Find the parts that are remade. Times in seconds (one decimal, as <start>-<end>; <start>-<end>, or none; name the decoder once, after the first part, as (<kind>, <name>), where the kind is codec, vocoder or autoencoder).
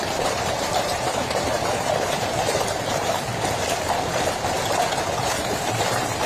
0.0-3.3 (vocoder, BigVGAN v2); 5.2-6.3